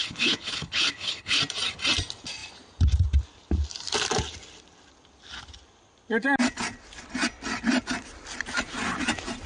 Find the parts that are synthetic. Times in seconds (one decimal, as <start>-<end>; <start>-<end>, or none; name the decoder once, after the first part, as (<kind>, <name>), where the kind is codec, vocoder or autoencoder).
0.0-1.4 (codec, HILCodec)

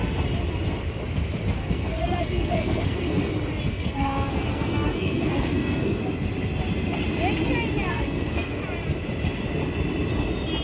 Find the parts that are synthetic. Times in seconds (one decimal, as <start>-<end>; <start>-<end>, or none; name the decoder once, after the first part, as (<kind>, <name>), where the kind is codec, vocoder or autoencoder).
1.6-3.3 (codec, SNAC); 3.7-6.0; 7.9-8.6

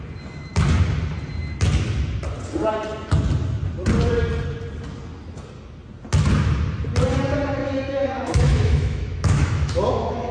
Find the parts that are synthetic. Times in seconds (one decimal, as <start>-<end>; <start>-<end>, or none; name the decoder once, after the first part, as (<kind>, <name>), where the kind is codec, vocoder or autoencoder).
7.6-10.3 (autoencoder, DAC-VAE)

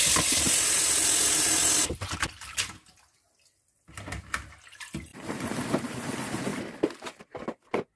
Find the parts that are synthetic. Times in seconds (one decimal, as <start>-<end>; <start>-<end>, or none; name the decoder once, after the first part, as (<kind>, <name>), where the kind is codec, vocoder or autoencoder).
5.1-6.1 (vocoder, BigVGAN v2); 6.5-7.1

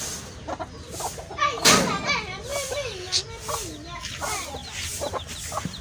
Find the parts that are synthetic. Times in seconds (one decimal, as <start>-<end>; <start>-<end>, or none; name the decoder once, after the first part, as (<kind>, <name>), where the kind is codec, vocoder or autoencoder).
none